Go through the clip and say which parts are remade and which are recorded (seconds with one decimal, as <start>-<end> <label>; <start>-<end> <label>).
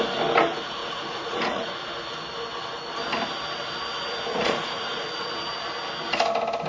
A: 0.0-0.8 recorded; 0.8-1.8 remade; 1.8-4.3 recorded; 4.3-5.3 remade; 5.3-6.7 recorded